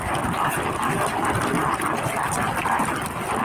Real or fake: real